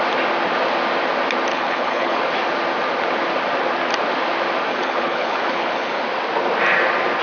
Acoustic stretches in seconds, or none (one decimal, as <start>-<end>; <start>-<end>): 0.0-1.5; 2.2-4.7; 6.0-7.2